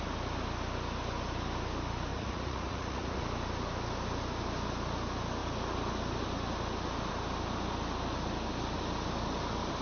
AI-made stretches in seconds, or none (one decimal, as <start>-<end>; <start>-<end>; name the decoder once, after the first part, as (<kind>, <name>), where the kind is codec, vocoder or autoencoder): 2.1-3.2 (vocoder, Vocos)